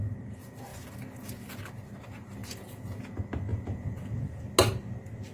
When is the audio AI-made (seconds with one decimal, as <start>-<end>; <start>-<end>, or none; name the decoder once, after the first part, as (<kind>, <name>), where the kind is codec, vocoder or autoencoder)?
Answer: 2.4-3.0 (vocoder, Vocos); 3.5-4.4